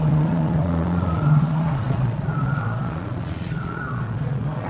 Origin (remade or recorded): remade